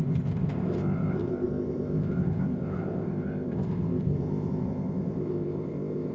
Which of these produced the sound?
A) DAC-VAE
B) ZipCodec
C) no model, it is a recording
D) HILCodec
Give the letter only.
B